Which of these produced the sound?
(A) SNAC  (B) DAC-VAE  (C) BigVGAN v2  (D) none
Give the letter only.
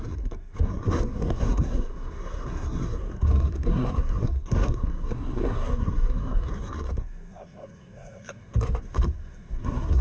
A